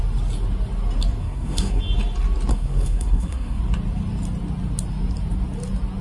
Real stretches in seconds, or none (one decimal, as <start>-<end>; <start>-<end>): 0.0-1.2; 1.8-2.5; 3.6-6.0